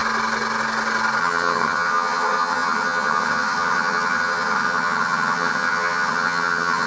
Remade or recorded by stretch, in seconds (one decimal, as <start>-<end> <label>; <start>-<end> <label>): 0.0-1.2 recorded; 1.2-6.9 remade